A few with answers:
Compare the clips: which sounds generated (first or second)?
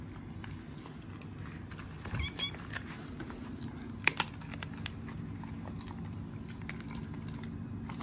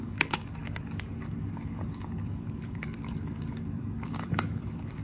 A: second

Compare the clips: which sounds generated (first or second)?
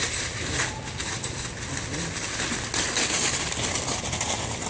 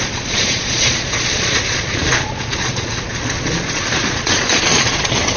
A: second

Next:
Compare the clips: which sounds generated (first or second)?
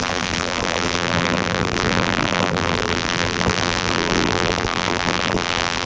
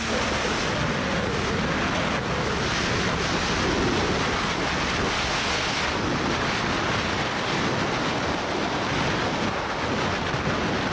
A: first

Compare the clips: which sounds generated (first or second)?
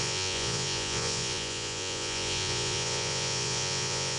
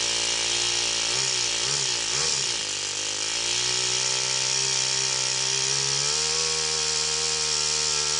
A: first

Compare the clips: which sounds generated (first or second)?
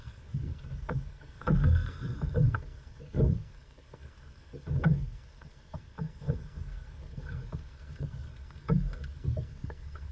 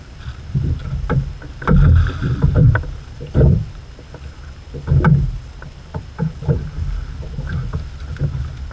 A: first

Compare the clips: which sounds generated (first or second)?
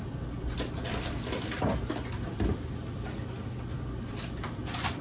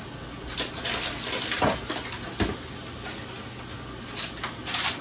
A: first